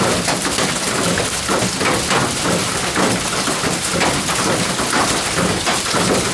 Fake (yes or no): no